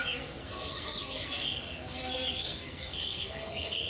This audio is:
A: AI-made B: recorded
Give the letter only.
A